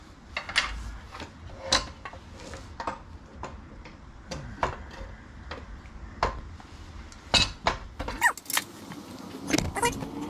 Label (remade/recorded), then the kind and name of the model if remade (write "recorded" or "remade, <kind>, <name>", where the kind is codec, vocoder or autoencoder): recorded